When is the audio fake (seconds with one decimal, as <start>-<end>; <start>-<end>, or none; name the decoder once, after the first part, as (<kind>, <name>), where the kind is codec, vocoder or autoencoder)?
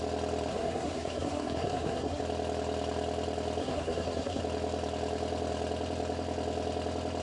0.5-2.2 (codec, SNAC); 3.6-4.4